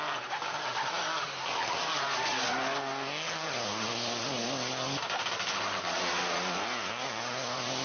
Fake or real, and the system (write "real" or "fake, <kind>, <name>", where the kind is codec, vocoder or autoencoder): real